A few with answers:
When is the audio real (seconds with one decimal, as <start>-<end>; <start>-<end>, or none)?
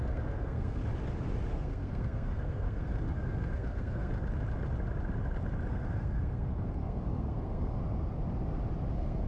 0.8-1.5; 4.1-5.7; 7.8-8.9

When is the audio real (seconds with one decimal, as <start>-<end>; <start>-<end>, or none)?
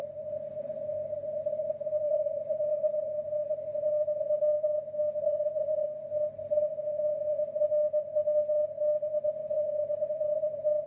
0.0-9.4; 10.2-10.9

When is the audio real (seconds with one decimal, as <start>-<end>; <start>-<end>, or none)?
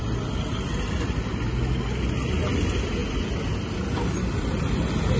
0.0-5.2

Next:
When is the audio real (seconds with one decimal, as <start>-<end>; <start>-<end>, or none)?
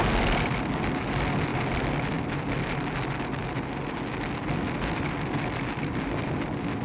0.0-6.8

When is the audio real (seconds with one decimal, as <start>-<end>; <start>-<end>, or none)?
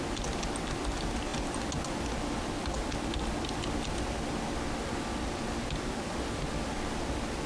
0.0-7.5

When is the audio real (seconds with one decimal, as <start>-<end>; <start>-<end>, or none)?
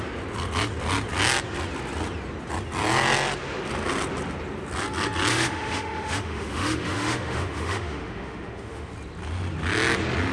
0.0-5.3; 8.9-10.3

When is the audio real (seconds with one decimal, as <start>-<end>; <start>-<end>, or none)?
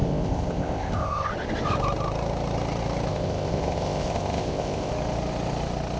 1.3-3.1; 4.9-6.0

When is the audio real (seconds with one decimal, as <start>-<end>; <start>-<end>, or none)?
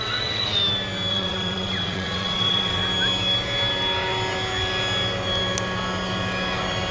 0.6-1.1; 2.8-6.9